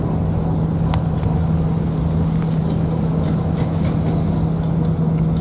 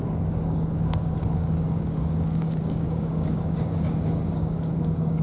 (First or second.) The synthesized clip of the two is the second